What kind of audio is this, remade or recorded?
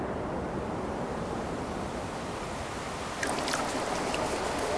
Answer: recorded